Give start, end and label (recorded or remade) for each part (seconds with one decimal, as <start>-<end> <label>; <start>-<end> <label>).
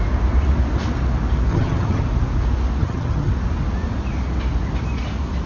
0.0-1.5 recorded; 1.5-2.0 remade; 2.0-2.8 recorded; 2.8-3.3 remade; 3.3-5.5 recorded